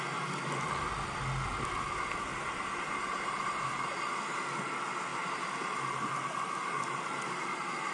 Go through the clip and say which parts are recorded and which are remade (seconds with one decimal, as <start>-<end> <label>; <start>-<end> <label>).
0.0-2.3 recorded; 2.3-3.7 remade; 3.7-5.1 recorded; 5.1-7.9 remade